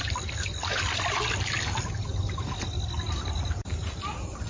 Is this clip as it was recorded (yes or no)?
yes